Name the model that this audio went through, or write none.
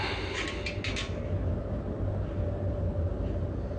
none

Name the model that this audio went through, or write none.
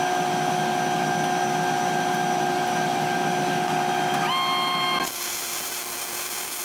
none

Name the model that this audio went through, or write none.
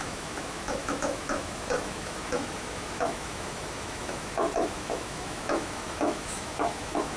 autoencoder, DAC-VAE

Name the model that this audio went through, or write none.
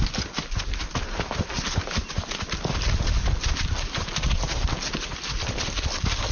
none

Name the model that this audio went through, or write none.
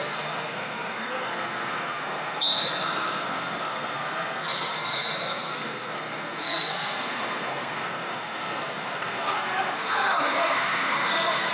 codec, SNAC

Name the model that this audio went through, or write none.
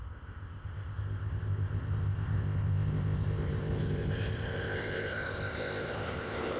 codec, ZipCodec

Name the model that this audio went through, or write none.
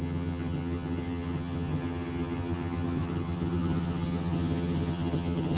vocoder, HiFi-GAN